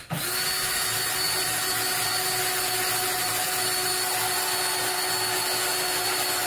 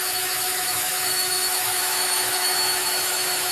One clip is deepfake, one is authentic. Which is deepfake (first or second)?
second